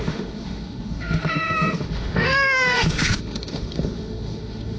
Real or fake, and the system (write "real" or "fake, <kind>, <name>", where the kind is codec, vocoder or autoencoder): fake, autoencoder, DAC-VAE